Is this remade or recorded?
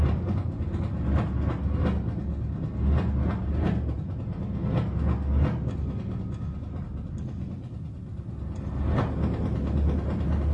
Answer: recorded